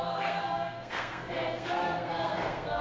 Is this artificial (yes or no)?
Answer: yes